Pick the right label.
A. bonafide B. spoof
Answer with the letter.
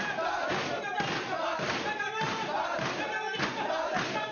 A